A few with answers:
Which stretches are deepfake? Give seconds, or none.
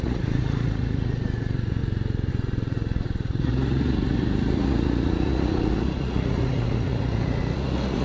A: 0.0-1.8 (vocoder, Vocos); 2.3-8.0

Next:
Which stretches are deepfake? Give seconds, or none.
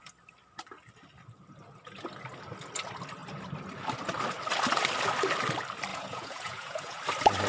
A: 5.9-7.0 (vocoder, Vocos)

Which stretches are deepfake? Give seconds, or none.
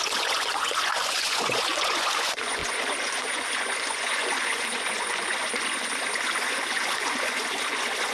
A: 0.0-8.1 (vocoder, Vocos)